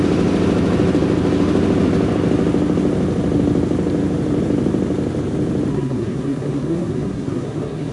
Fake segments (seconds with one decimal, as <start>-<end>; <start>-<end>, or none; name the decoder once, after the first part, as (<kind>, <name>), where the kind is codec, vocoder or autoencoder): 5.7-7.9 (codec, SNAC)